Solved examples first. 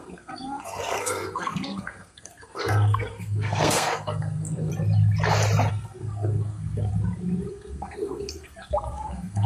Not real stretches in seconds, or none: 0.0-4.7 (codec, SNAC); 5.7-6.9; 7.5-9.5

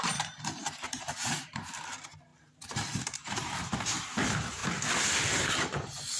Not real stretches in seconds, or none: 0.0-4.6 (vocoder, BigVGAN v2); 5.2-6.2

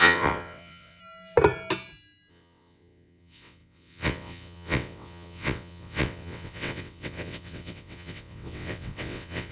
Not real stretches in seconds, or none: 0.0-1.0 (vocoder, WaveNeXt); 2.3-9.5